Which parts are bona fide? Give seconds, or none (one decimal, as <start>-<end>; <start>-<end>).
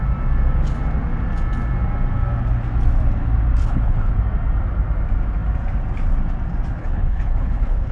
0.0-3.6; 4.1-6.8